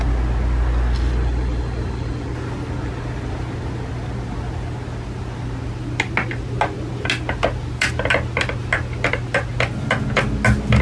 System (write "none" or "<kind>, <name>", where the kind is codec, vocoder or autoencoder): none